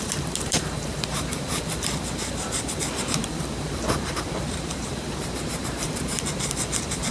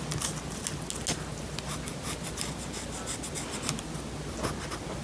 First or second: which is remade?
first